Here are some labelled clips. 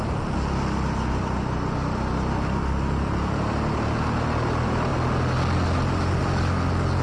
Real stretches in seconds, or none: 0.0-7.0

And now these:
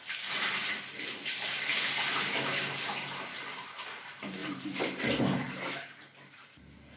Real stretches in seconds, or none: 0.0-7.0

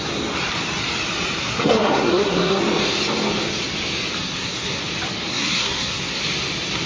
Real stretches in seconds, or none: 0.0-1.4; 2.6-4.2; 4.8-5.3; 6.2-6.9

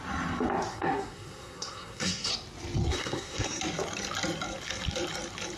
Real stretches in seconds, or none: 0.0-0.7; 2.3-2.9; 3.6-5.6

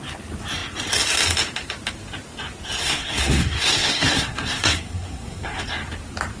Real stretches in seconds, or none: 0.0-2.8; 5.6-6.4